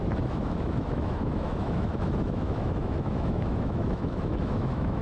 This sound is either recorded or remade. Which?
remade